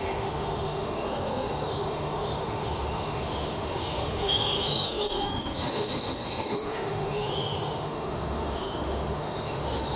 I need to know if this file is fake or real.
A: fake